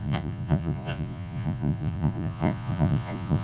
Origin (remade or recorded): remade